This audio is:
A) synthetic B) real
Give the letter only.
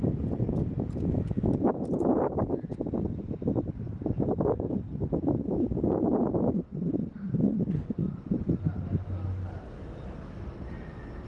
B